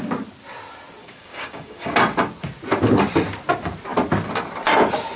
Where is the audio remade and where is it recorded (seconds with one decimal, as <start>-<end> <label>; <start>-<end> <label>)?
0.0-1.0 recorded; 1.0-1.9 remade; 1.9-5.2 recorded